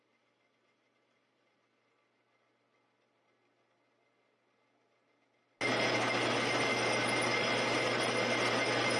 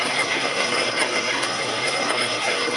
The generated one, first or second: second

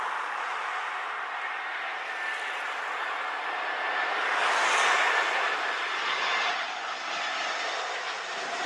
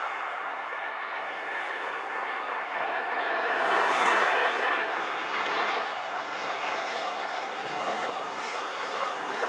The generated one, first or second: second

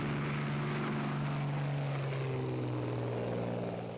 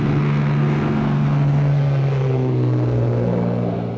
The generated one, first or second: second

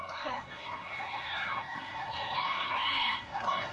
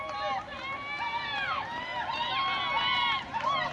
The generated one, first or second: first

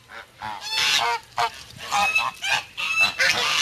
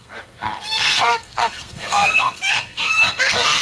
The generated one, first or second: second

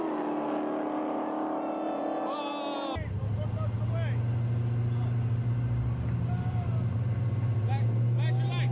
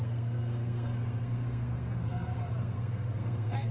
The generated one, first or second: second